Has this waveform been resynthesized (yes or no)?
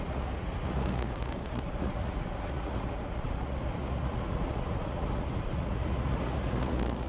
yes